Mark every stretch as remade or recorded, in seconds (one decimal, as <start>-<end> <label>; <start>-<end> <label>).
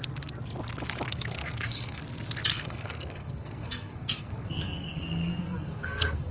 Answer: 0.0-1.1 recorded; 1.1-2.0 remade; 2.0-2.5 recorded; 2.5-6.3 remade